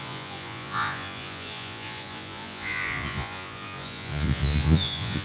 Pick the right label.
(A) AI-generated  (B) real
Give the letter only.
A